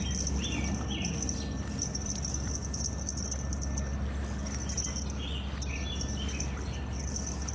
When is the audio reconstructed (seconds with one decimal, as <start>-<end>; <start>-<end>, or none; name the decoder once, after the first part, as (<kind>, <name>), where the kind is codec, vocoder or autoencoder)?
none